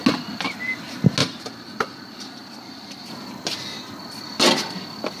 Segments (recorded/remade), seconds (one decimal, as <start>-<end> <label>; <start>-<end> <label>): 0.0-1.2 recorded; 1.2-3.1 remade; 3.1-5.2 recorded